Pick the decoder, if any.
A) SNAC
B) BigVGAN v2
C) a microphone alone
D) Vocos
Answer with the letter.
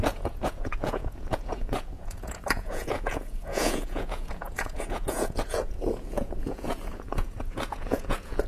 D